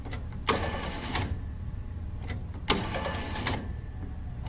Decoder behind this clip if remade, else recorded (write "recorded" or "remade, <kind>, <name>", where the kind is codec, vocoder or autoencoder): remade, vocoder, BigVGAN v2